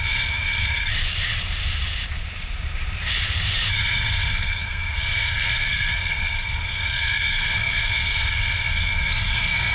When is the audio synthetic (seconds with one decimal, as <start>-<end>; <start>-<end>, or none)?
0.0-0.9; 3.7-9.7